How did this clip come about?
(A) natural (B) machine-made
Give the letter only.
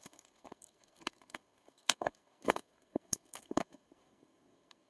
B